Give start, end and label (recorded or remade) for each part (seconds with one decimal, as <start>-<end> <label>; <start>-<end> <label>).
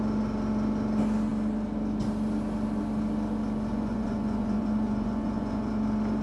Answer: 0.0-3.7 recorded; 3.7-5.7 remade; 5.7-6.2 recorded